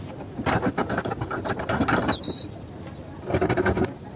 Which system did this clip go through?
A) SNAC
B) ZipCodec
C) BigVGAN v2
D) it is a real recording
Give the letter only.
D